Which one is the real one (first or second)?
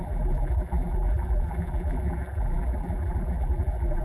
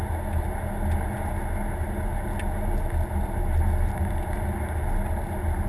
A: second